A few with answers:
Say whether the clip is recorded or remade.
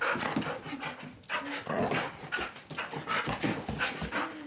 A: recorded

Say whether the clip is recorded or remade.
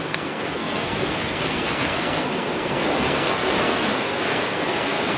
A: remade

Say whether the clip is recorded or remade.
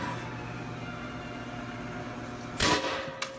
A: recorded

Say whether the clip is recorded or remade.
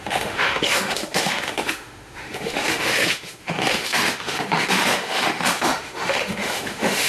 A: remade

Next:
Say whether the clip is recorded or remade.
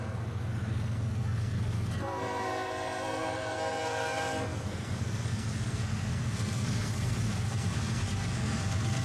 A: remade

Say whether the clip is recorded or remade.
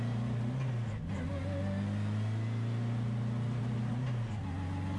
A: recorded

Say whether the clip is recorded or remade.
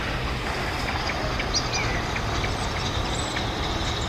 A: recorded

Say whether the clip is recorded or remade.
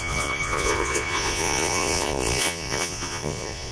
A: remade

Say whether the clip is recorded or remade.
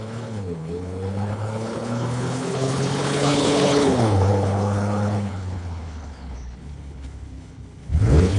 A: remade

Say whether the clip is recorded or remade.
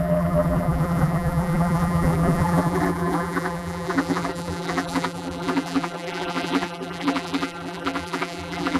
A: remade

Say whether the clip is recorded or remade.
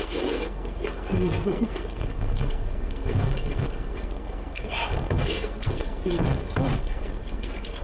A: remade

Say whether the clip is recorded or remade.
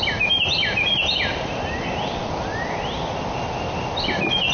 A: recorded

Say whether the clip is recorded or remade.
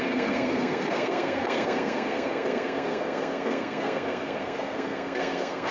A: remade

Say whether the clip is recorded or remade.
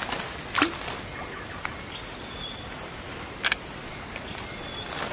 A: recorded